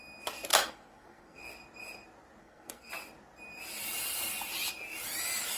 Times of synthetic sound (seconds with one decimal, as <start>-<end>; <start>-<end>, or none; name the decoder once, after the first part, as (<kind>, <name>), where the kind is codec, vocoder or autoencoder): 0.5-1.4 (codec, SNAC); 2.4-2.9